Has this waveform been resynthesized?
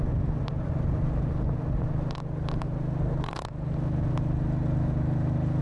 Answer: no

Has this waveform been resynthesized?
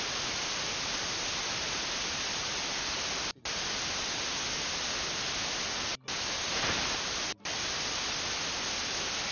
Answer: no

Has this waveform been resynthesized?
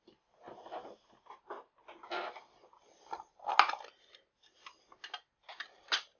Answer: no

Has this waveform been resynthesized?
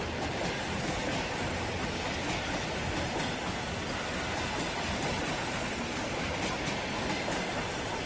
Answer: no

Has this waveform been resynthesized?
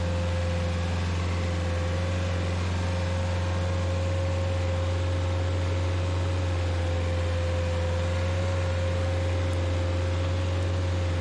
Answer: no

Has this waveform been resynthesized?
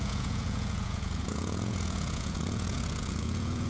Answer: yes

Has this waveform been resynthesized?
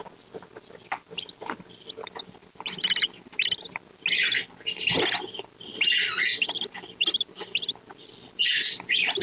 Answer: no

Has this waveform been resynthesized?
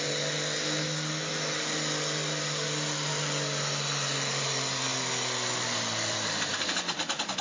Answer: no